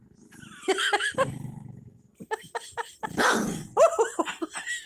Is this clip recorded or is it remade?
recorded